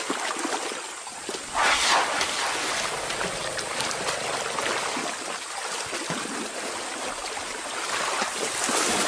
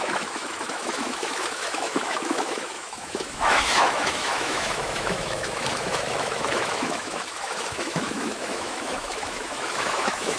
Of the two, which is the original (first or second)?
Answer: first